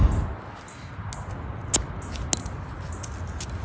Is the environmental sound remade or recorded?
recorded